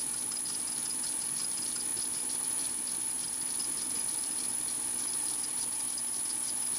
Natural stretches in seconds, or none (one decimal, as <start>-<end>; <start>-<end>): 0.0-1.9; 6.0-6.8